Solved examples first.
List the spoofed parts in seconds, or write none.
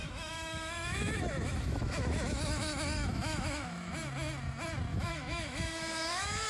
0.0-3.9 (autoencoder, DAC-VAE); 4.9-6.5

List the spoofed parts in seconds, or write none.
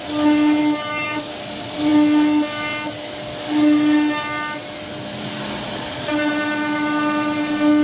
0.6-1.3 (autoencoder, DAC-VAE)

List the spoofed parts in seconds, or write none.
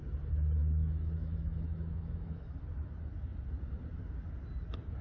0.6-2.6 (autoencoder, DAC-VAE)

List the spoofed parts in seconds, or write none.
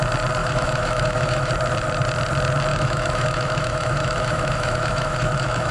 0.4-1.5 (autoencoder, DAC-VAE); 2.7-5.7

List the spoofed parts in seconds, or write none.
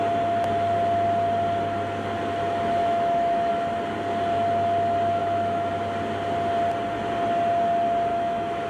2.8-3.5 (autoencoder, DAC-VAE); 5.2-5.7; 8.1-8.7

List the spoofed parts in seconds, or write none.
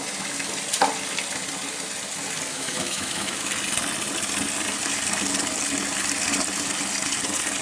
2.5-3.5 (autoencoder, DAC-VAE)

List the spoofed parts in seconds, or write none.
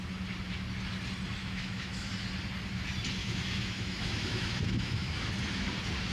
1.4-2.1 (autoencoder, DAC-VAE); 3.2-5.3